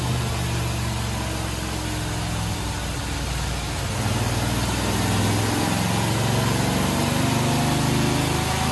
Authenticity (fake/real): real